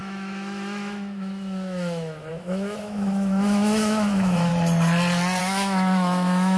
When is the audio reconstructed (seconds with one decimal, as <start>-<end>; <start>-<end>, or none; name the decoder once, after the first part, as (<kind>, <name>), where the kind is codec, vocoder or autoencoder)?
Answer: 0.0-4.5 (autoencoder, DAC-VAE); 5.4-6.6